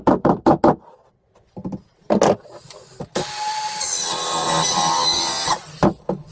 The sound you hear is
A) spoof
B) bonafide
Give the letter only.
B